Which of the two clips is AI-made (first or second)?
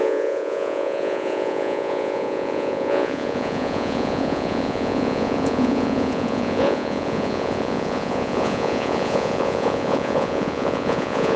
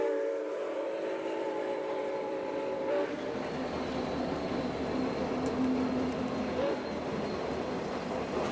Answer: first